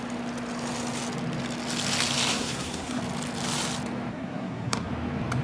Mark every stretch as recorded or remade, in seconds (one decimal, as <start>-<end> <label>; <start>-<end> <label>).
0.0-2.3 recorded; 2.3-3.0 remade; 3.0-4.1 recorded; 4.1-4.9 remade; 4.9-5.4 recorded